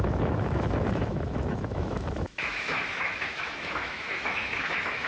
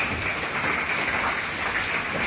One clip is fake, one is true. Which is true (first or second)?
second